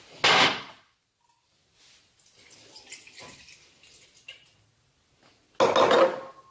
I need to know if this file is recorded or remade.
recorded